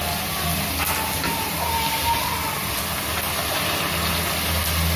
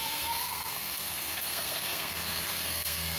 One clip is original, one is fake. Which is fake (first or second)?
second